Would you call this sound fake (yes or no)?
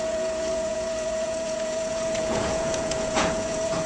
yes